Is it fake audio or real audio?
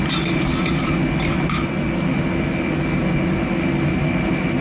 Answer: real